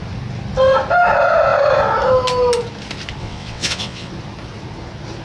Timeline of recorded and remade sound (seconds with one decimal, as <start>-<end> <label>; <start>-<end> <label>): 0.0-3.2 recorded; 3.2-4.1 remade; 4.1-5.2 recorded

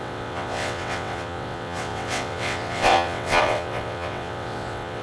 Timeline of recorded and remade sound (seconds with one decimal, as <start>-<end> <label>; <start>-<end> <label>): 0.0-5.0 remade

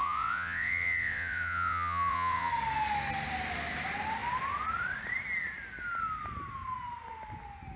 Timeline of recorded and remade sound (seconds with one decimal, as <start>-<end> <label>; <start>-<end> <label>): 0.0-2.5 remade; 2.5-7.8 recorded

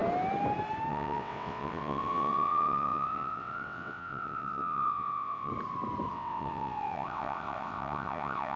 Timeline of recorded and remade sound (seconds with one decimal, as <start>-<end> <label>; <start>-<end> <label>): 0.0-0.9 recorded; 0.9-5.5 remade; 5.5-6.1 recorded; 6.1-8.6 remade

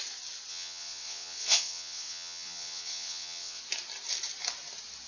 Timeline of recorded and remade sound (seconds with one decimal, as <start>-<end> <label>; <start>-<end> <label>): 0.0-0.5 recorded; 0.5-3.6 remade; 3.6-5.1 recorded

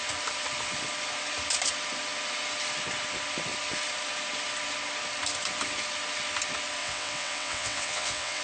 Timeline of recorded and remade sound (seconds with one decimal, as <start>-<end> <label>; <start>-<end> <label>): 0.0-6.8 recorded; 6.8-8.4 remade

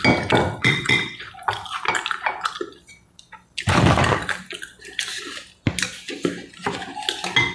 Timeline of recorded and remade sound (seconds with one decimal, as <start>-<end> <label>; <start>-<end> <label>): 0.0-0.6 recorded; 0.6-1.3 remade; 1.3-7.5 recorded

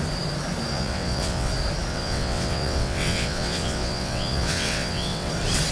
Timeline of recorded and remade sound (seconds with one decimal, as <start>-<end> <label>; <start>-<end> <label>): 0.0-0.7 recorded; 0.7-1.5 remade; 1.5-1.9 recorded; 1.9-5.3 remade; 5.3-5.7 recorded